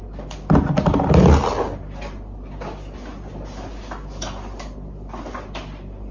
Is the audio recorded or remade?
recorded